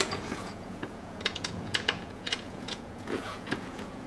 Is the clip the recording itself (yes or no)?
no